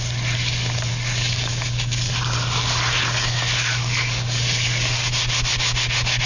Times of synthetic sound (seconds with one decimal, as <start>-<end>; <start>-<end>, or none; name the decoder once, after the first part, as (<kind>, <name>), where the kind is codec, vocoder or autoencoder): 0.9-2.1 (codec, DAC); 3.7-5.1